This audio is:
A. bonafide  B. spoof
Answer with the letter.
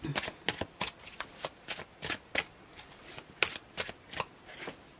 A